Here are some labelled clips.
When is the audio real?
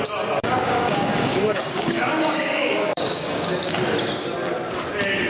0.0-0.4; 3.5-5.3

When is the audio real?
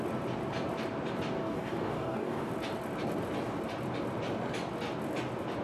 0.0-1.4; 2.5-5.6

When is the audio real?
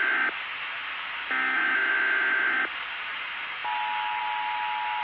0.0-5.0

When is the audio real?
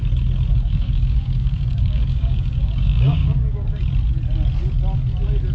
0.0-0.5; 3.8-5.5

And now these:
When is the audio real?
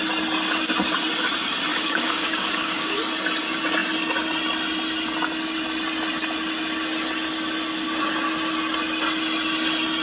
0.0-1.7; 2.9-10.0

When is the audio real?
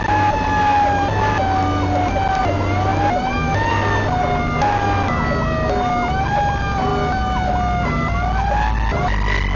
0.0-9.6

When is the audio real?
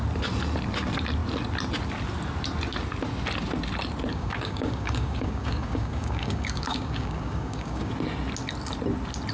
0.0-4.1; 7.9-9.3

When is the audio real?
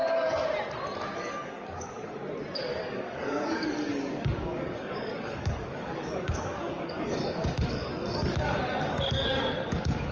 0.0-1.2; 2.2-2.8